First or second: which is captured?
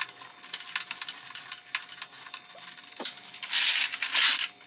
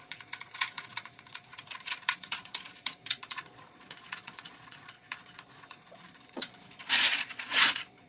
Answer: first